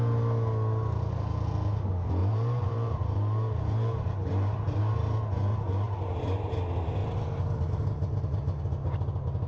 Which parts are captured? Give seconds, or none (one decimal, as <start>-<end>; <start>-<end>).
0.0-2.2; 4.8-5.5; 6.5-7.0; 8.6-9.5